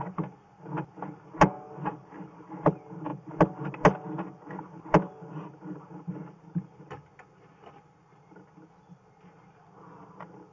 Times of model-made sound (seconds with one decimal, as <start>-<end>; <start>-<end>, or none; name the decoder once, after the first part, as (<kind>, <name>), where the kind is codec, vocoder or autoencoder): none